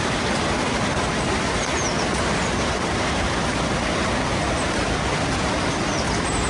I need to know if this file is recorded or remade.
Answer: recorded